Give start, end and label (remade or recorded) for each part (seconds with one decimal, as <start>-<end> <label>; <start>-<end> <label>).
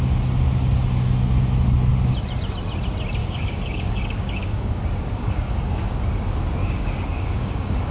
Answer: 0.0-3.2 recorded; 3.2-5.9 remade; 5.9-6.6 recorded; 6.6-7.9 remade